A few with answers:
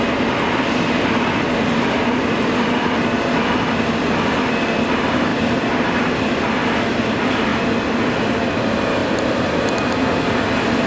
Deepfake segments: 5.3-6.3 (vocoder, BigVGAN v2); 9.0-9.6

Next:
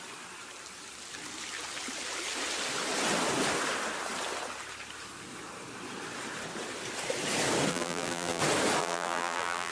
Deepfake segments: 7.7-8.4 (vocoder, BigVGAN v2); 8.8-9.7

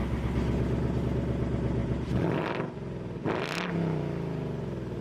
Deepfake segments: 1.8-5.0 (vocoder, BigVGAN v2)

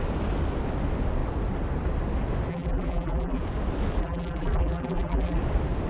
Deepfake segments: 2.5-3.4 (vocoder, BigVGAN v2); 4.0-5.4

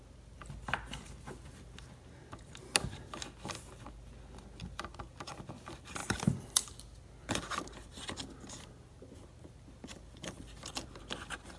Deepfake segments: 6.0-11.0 (vocoder, BigVGAN v2)

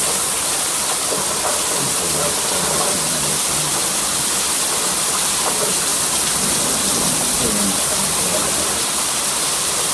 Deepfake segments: 3.8-4.9 (vocoder, BigVGAN v2)

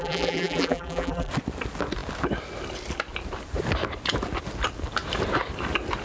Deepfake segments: 0.0-1.3 (vocoder, BigVGAN v2)

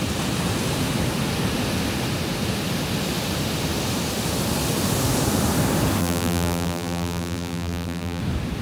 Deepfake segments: 6.0-8.2 (vocoder, BigVGAN v2)